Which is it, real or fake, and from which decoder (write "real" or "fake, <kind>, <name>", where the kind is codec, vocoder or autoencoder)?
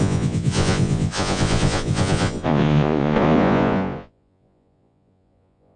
fake, vocoder, Vocos